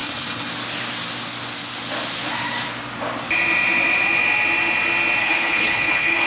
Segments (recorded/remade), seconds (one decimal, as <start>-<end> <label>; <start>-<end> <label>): 0.0-0.5 remade; 0.5-5.2 recorded; 5.2-6.3 remade